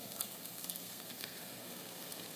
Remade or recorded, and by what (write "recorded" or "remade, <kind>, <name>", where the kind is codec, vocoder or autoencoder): remade, codec, SNAC